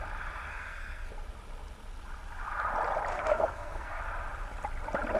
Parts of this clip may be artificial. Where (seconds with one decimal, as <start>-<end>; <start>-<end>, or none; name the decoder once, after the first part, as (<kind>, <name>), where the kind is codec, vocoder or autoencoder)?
0.5-1.1 (codec, SNAC); 3.1-4.0